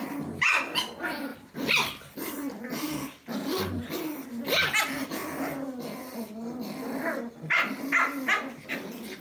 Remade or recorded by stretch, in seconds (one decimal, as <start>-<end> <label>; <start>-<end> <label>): 0.0-9.2 recorded